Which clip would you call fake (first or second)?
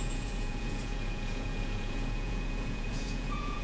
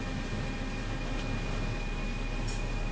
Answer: first